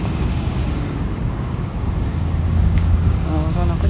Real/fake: fake